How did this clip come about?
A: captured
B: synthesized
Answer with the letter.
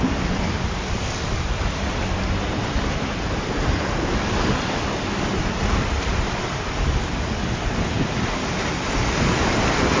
A